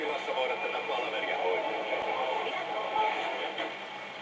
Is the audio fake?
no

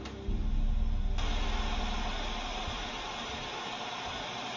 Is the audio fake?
no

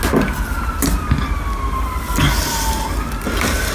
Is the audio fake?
no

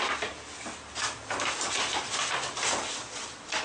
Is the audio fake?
no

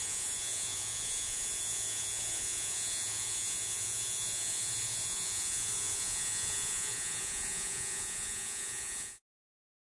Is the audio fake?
yes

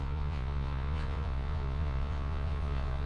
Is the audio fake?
yes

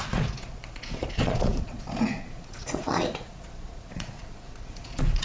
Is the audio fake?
yes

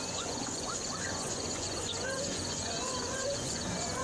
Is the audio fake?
yes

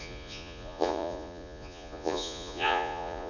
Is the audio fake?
yes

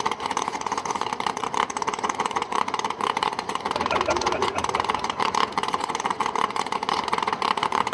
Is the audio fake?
yes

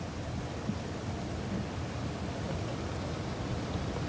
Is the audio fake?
no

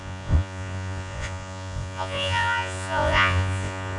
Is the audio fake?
yes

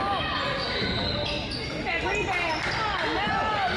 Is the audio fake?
no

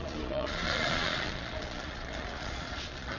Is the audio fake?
yes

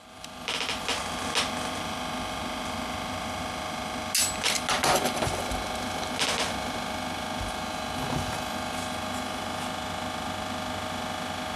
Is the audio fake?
no